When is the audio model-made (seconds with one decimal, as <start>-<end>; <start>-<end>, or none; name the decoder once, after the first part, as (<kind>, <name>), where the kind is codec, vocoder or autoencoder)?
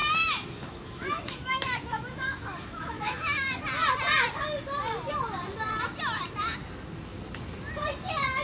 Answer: 0.0-3.6 (autoencoder, DAC-VAE)